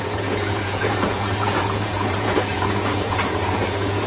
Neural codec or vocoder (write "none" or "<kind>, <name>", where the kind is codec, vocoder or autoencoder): vocoder, Vocos